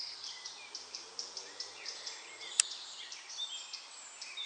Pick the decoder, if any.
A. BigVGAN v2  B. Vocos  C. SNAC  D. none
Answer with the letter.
A